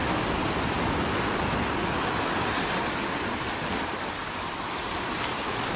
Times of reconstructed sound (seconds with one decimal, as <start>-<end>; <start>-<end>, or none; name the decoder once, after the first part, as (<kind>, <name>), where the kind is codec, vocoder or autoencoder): none

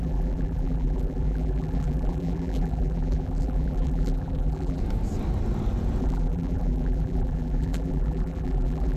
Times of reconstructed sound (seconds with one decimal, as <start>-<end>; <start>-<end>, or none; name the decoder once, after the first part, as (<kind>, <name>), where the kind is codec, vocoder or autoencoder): 0.0-4.8 (vocoder, BigVGAN v2); 6.0-9.0

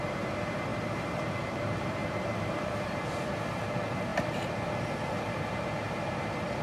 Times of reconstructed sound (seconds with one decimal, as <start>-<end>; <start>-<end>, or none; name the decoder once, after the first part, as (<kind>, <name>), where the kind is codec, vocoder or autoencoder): 0.0-6.6 (vocoder, BigVGAN v2)

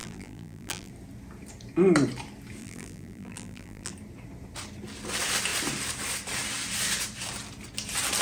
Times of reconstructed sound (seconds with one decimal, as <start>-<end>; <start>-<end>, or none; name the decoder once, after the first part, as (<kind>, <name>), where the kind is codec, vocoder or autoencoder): 0.0-0.9 (vocoder, BigVGAN v2); 2.6-3.9

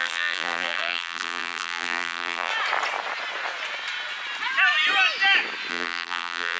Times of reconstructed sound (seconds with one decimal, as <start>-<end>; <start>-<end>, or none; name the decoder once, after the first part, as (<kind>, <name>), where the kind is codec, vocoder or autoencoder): 0.0-2.5 (vocoder, BigVGAN v2); 5.7-6.6

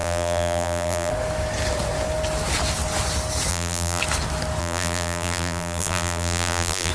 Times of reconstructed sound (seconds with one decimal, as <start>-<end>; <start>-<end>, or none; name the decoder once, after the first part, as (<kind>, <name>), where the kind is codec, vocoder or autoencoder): 0.0-1.1 (vocoder, BigVGAN v2); 3.5-4.0; 4.6-6.9

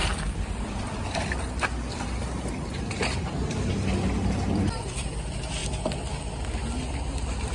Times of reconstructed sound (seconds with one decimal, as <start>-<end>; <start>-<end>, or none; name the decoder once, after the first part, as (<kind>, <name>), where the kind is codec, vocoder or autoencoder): 0.0-1.4 (vocoder, BigVGAN v2)